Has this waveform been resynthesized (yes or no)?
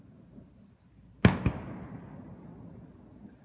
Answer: no